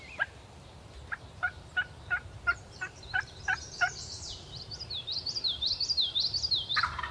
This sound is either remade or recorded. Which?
remade